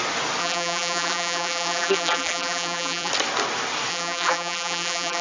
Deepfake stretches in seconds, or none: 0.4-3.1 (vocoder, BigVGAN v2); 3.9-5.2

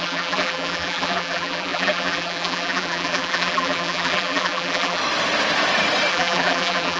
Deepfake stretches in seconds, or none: 0.0-5.0 (vocoder, BigVGAN v2); 6.1-7.0

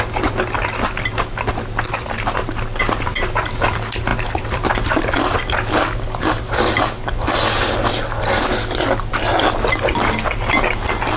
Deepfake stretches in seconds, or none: 4.1-4.7 (vocoder, BigVGAN v2)

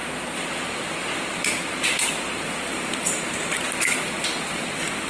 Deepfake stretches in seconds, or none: none

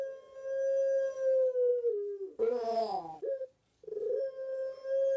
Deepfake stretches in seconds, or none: 1.7-2.6 (vocoder, BigVGAN v2)

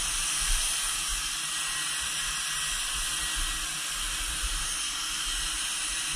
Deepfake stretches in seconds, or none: none